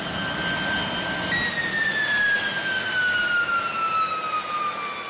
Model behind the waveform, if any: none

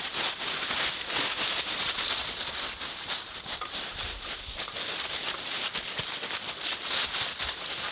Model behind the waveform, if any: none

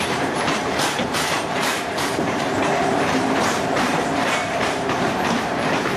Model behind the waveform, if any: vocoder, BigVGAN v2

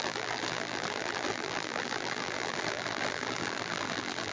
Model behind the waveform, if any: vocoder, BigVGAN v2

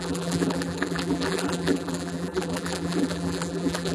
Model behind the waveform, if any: vocoder, BigVGAN v2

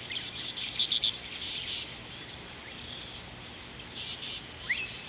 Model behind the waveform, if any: none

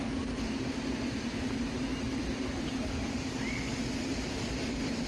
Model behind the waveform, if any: none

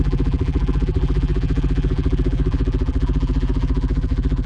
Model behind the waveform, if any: vocoder, BigVGAN v2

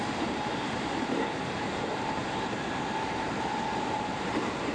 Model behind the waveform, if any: vocoder, BigVGAN v2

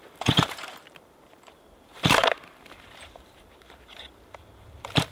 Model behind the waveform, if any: vocoder, BigVGAN v2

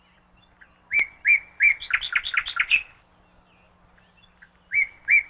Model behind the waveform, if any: none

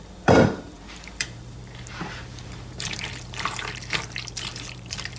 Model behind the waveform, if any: vocoder, BigVGAN v2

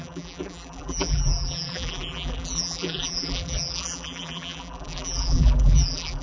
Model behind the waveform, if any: vocoder, BigVGAN v2